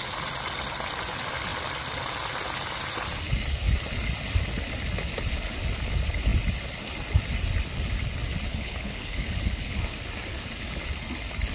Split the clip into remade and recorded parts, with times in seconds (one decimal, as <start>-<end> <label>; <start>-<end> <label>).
0.0-8.5 recorded; 8.5-9.8 remade; 9.8-11.5 recorded